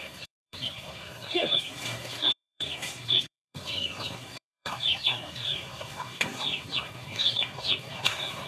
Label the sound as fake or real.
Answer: fake